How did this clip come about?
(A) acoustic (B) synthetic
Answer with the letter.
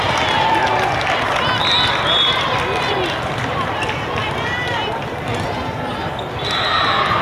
A